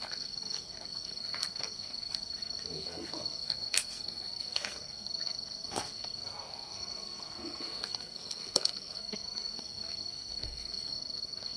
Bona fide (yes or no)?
no